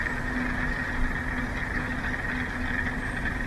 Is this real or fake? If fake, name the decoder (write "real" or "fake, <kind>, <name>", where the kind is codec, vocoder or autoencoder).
real